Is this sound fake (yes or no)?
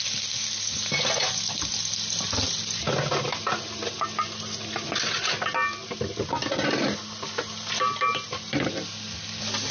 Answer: no